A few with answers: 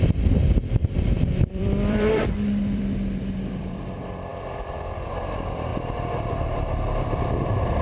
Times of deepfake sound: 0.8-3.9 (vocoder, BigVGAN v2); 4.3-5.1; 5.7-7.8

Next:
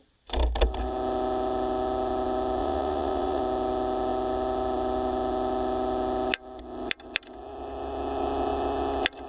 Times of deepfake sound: 2.6-3.4 (vocoder, Vocos)

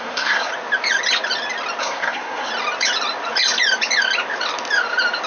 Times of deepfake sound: 0.0-0.5 (codec, SNAC); 1.8-2.5

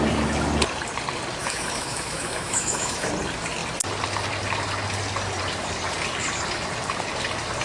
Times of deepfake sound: 1.4-3.1 (autoencoder, DAC-VAE)

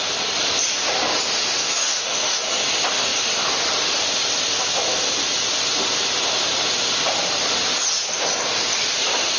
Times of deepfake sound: 1.8-2.4 (autoencoder, DAC-VAE)